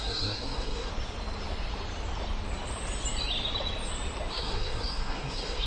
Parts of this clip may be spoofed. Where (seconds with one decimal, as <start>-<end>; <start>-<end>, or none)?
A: 0.0-0.9; 4.3-5.7